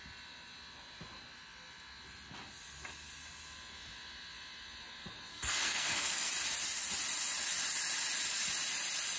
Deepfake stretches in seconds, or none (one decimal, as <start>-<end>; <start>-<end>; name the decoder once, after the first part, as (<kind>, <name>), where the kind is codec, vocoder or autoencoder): 5.3-6.3 (codec, SNAC)